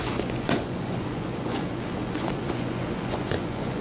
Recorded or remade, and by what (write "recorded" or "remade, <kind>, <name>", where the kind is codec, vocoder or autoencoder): remade, vocoder, Vocos